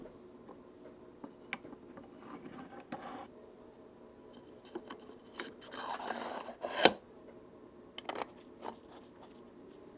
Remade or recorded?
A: recorded